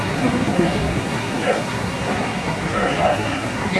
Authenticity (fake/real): fake